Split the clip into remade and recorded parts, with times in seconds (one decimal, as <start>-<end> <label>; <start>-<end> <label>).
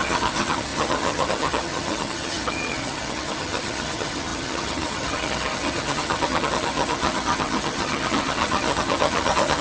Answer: 0.0-9.6 remade